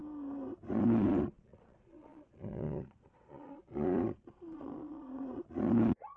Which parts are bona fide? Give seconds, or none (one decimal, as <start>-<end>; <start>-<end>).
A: 0.0-0.7